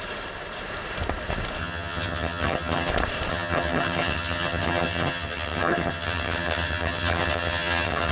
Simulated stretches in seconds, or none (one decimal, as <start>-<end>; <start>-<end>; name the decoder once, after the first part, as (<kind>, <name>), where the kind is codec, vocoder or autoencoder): 1.6-2.9 (vocoder, HiFi-GAN); 3.3-8.1